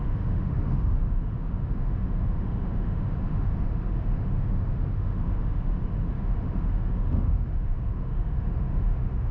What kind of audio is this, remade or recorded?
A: remade